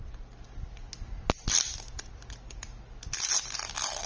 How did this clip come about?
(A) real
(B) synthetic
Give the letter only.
A